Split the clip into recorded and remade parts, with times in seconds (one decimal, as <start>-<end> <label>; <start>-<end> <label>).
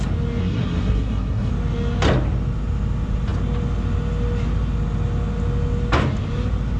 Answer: 0.0-0.4 recorded; 0.4-1.5 remade; 1.5-6.8 recorded